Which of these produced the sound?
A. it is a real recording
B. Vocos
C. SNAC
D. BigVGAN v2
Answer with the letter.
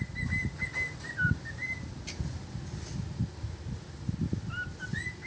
A